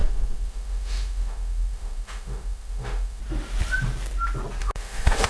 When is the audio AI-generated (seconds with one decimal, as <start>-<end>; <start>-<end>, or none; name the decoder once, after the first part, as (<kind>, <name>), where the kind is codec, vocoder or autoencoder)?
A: 0.0-3.2 (autoencoder, DAC-VAE); 4.6-5.3

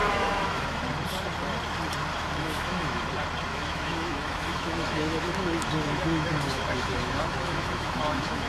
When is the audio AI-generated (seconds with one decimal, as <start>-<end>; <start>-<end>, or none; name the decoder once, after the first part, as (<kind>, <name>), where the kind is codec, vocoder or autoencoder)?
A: 0.0-0.8 (autoencoder, DAC-VAE); 2.1-3.0; 3.5-8.5

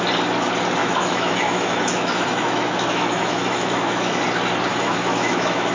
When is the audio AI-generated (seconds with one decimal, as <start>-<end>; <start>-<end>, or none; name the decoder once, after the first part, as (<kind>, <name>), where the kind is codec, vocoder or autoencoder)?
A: 0.8-4.2 (autoencoder, DAC-VAE); 4.7-5.7

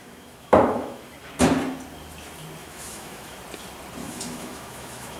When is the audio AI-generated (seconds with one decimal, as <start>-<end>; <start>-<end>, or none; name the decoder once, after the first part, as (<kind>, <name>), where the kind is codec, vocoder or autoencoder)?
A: 0.0-1.0 (autoencoder, DAC-VAE); 2.6-3.4; 4.0-5.2